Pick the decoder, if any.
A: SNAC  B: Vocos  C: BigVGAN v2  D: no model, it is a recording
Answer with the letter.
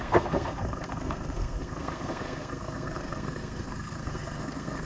A